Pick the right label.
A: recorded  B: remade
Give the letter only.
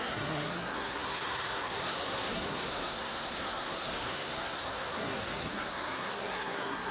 B